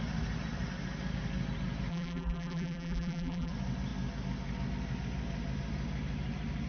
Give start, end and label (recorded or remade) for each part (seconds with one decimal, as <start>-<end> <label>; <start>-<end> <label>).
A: 0.0-1.9 recorded; 1.9-3.5 remade; 3.5-6.7 recorded